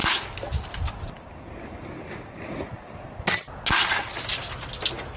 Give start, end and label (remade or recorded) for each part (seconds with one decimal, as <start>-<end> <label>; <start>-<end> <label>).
0.0-5.2 recorded